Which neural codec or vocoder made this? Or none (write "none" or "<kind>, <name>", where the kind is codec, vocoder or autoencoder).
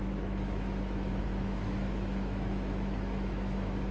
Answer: autoencoder, DAC-VAE